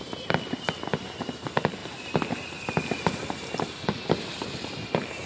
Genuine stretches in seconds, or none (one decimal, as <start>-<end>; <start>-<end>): 0.0-5.3